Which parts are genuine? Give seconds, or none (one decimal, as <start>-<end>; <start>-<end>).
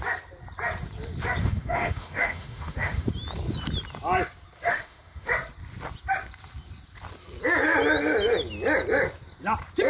0.0-1.4; 3.1-4.7; 5.3-9.9